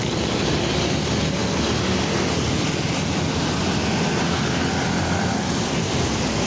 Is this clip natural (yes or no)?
yes